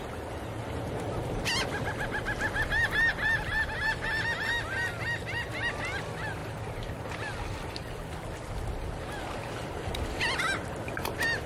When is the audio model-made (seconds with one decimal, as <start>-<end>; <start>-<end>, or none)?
none